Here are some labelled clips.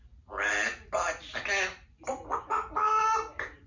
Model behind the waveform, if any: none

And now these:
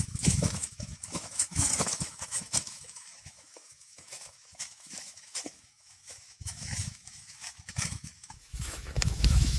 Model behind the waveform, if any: autoencoder, DAC-VAE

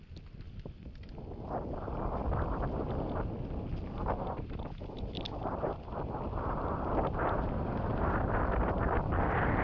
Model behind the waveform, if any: none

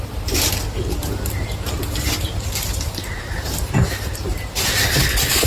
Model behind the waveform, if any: none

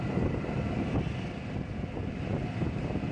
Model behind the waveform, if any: none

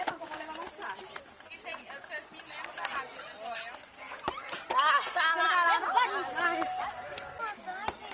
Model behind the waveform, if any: none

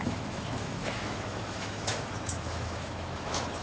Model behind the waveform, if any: autoencoder, DAC-VAE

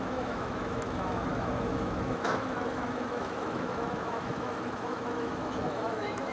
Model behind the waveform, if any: autoencoder, DAC-VAE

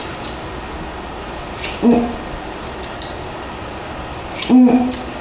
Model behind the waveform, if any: none